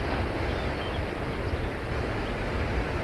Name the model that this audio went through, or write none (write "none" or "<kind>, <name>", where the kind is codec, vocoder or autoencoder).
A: none